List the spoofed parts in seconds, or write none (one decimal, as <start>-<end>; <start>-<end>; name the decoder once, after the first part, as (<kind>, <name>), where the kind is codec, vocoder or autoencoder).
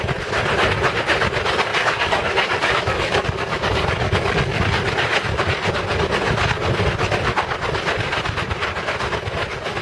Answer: 1.7-4.6 (codec, DAC)